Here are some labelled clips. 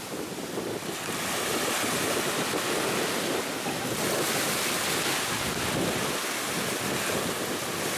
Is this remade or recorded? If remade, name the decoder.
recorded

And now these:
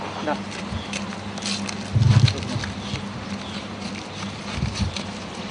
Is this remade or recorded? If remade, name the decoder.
recorded